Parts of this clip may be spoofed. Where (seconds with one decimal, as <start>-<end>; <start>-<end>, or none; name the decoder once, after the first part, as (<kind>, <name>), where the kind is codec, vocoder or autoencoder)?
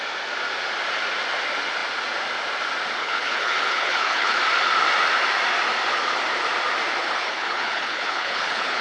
3.0-4.4 (codec, HILCodec); 7.0-8.8